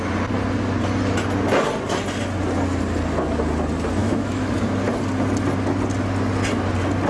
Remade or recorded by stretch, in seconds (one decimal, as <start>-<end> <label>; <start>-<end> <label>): 0.0-4.0 recorded; 4.0-4.5 remade; 4.5-7.1 recorded